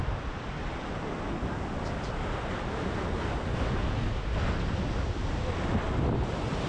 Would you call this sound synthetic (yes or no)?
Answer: no